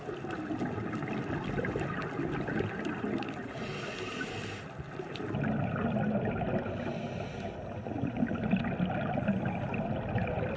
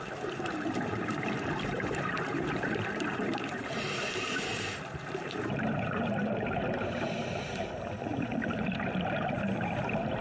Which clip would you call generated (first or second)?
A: second